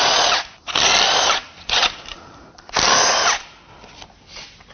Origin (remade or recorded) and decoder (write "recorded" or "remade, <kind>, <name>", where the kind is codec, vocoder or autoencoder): recorded